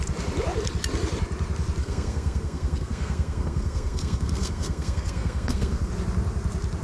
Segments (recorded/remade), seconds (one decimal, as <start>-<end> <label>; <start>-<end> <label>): 0.0-1.8 recorded; 1.8-5.9 remade; 5.9-6.8 recorded